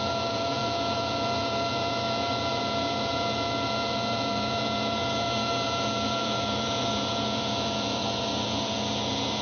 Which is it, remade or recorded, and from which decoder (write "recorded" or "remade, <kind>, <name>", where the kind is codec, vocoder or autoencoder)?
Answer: remade, vocoder, Vocos